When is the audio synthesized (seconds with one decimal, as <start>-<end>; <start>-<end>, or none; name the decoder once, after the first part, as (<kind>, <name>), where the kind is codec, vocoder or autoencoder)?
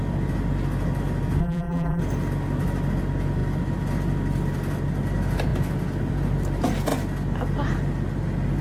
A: 1.4-2.0 (vocoder, BigVGAN v2)